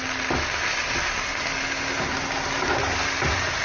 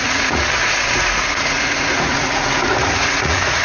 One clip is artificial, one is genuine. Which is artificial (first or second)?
second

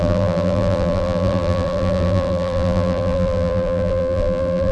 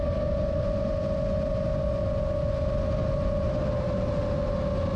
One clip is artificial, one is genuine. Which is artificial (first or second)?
first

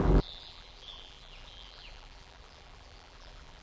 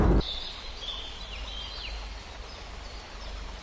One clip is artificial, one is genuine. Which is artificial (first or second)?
first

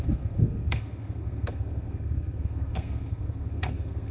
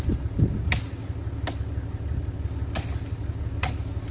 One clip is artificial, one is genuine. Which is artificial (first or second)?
first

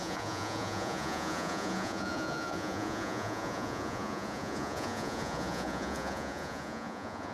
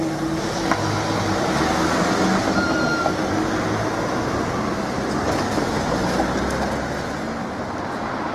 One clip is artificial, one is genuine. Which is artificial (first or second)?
first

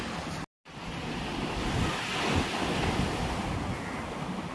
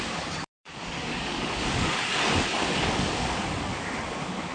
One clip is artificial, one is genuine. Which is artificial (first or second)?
second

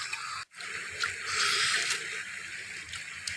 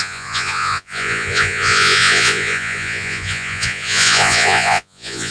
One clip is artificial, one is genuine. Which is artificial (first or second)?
second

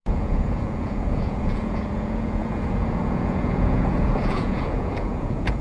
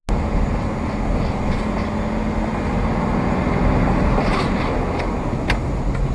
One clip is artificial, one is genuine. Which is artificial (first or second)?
first